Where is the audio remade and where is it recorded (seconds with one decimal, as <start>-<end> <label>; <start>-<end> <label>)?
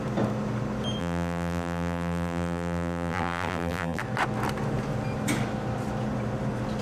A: 0.0-1.0 recorded; 1.0-4.0 remade; 4.0-6.8 recorded